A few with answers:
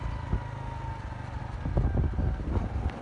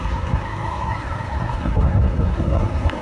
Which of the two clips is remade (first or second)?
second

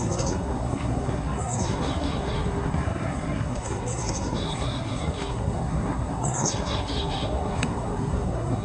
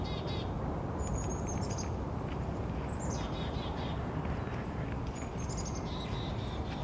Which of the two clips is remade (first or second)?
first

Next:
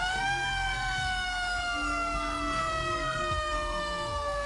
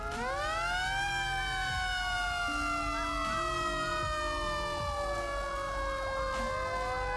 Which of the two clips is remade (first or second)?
first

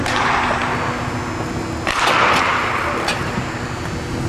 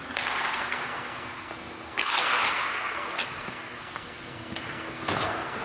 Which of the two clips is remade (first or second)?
second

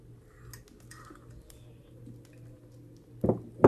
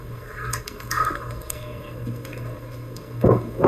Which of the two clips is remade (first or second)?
second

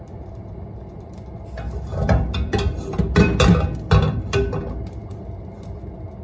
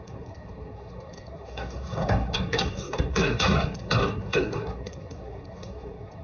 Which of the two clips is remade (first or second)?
second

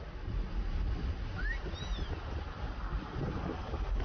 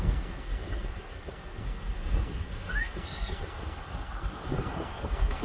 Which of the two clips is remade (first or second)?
second